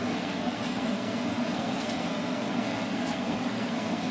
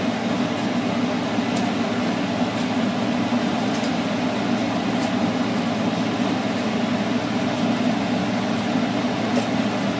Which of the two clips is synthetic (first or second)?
first